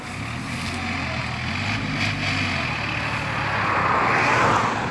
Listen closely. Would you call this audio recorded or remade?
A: recorded